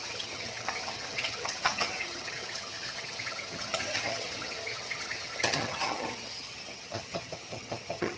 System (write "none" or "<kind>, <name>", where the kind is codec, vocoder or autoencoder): vocoder, HiFi-GAN